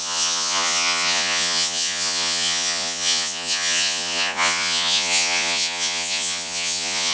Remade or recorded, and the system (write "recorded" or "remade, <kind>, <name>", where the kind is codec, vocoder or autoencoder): remade, vocoder, Vocos